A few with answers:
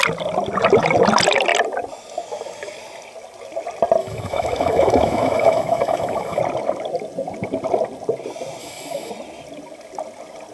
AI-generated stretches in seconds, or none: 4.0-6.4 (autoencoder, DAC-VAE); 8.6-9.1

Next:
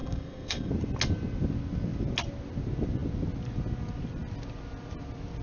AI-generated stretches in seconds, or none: 0.0-0.7 (codec, SNAC)

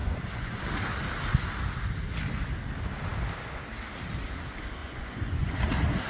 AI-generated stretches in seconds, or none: 0.0-0.6 (vocoder, Vocos); 4.8-5.6

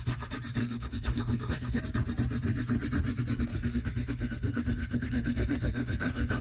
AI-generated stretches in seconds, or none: 0.6-1.8 (codec, SNAC); 3.5-6.4

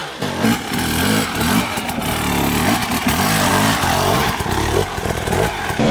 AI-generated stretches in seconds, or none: 3.5-5.9 (vocoder, BigVGAN v2)

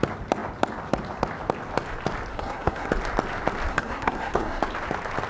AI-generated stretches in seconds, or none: 2.3-2.9 (codec, SNAC); 3.7-4.6

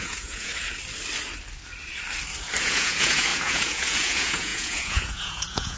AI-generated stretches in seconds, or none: 0.0-0.5 (vocoder, Vocos); 2.6-5.8